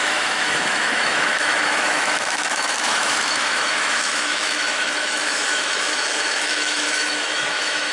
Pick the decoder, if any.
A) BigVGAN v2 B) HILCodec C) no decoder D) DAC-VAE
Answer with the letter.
D